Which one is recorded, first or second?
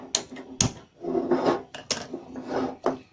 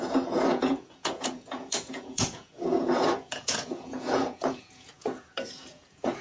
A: first